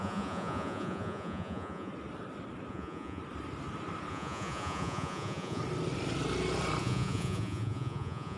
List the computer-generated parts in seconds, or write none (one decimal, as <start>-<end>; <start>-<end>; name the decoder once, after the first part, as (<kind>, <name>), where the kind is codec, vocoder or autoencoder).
0.0-1.9 (vocoder, Vocos); 2.7-3.2; 4.1-5.6; 6.8-8.4